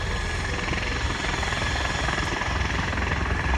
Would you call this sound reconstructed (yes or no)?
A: yes